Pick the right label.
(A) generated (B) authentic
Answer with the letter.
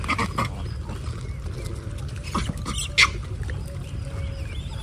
B